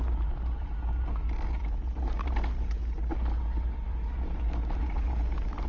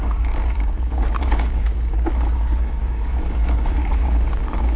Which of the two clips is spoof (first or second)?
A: second